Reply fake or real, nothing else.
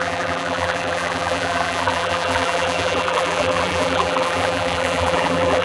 fake